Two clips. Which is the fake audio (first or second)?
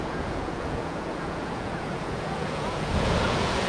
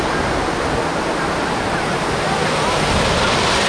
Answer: first